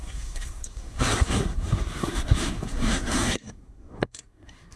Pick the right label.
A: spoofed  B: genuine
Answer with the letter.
A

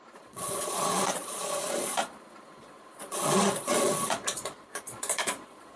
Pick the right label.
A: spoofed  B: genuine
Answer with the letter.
A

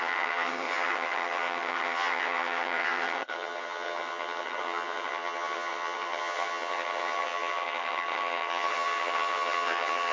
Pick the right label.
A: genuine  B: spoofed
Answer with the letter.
B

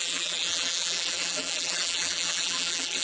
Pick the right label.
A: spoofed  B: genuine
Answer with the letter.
A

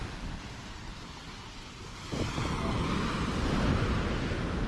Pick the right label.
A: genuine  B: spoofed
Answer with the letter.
A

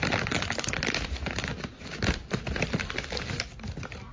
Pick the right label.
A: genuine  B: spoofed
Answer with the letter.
A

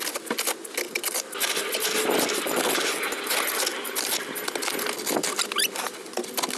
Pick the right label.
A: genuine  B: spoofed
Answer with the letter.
A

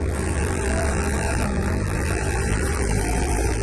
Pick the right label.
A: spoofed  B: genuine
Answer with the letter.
A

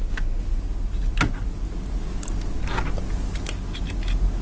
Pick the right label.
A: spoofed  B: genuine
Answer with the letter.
B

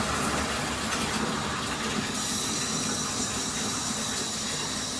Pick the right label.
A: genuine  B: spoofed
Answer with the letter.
B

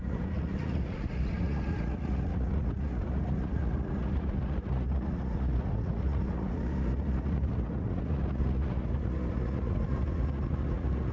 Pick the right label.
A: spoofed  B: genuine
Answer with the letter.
A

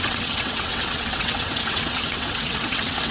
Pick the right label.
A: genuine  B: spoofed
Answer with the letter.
B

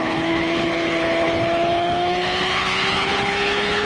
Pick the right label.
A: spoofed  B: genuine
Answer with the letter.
A